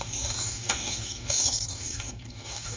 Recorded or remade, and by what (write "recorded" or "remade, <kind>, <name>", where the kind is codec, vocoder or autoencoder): remade, codec, DAC